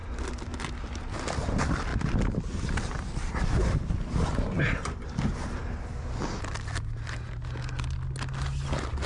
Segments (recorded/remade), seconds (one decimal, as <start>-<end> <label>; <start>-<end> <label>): 0.0-9.1 recorded